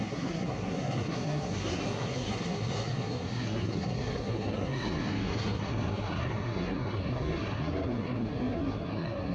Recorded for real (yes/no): no